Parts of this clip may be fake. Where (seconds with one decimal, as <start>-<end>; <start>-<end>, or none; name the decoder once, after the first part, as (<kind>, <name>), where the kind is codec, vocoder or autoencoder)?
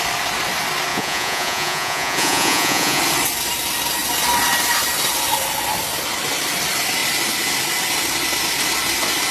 0.9-3.0 (vocoder, Vocos)